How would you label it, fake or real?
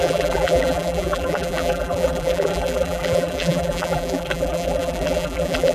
fake